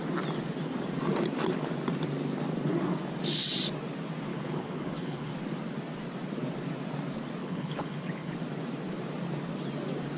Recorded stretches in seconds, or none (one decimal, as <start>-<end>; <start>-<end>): 0.0-4.3; 5.3-7.4; 8.3-10.2